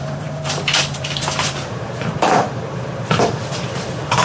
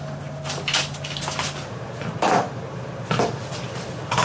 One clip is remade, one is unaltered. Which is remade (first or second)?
first